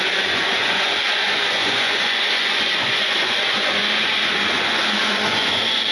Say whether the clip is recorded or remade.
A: remade